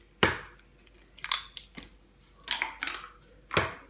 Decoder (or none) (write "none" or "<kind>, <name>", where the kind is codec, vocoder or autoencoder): none